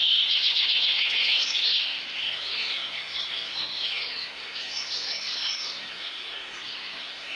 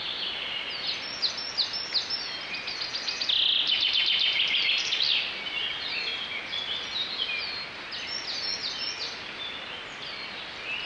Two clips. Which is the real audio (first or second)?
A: second